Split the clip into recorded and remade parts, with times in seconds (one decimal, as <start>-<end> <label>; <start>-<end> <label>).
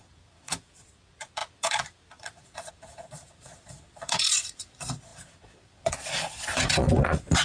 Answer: 0.0-7.4 remade